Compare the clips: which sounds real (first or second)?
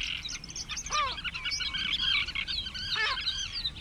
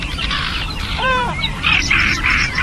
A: first